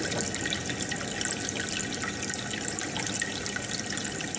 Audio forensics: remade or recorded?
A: recorded